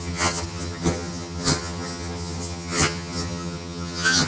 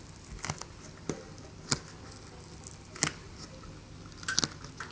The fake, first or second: first